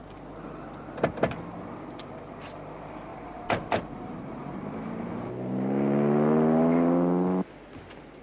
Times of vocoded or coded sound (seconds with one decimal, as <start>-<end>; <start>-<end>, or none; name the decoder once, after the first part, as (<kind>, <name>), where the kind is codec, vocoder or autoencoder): 3.1-5.1 (vocoder, BigVGAN v2)